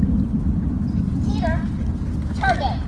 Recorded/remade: recorded